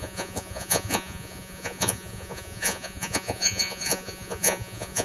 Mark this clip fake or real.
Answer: fake